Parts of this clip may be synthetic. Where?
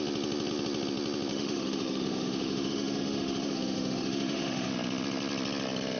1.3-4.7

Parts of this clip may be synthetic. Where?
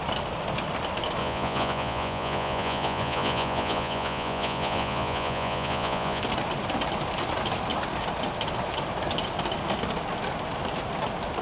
1.2-6.2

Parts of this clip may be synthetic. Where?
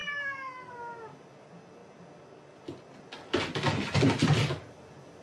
0.0-0.7